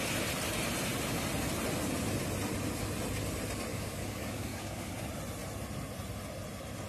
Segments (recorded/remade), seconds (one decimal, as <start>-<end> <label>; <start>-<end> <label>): 0.0-3.7 recorded; 3.7-4.9 remade; 4.9-6.9 recorded